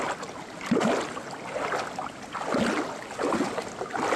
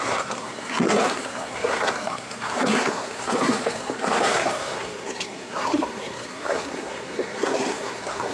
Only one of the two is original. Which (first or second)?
first